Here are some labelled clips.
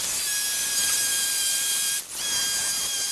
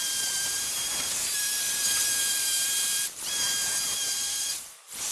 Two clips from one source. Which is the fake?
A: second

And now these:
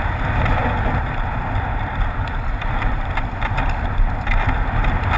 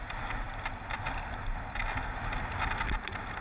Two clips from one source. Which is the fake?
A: first